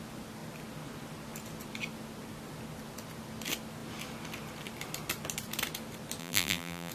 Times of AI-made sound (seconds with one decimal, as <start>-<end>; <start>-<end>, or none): 6.2-6.9